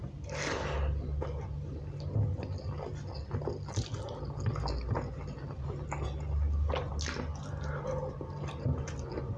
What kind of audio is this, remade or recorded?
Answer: recorded